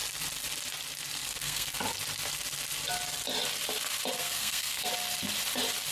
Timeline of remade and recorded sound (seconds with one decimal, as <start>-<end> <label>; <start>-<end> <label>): 0.0-1.2 recorded; 1.2-1.8 remade; 1.8-4.2 recorded; 4.2-4.9 remade; 4.9-5.9 recorded